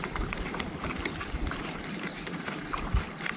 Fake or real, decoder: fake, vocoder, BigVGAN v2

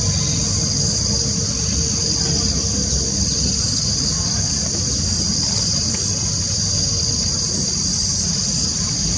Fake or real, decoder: real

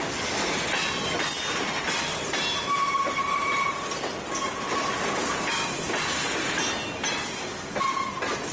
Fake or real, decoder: real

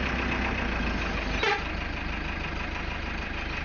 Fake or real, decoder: real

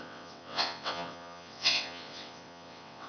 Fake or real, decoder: fake, vocoder, WaveNeXt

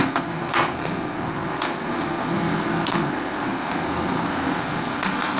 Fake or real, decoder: fake, codec, SNAC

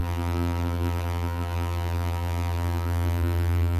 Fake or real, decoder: fake, vocoder, BigVGAN v2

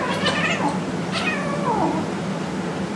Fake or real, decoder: real